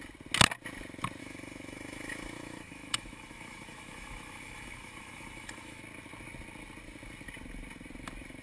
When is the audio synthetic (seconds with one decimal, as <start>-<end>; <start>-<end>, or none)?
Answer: 1.2-5.8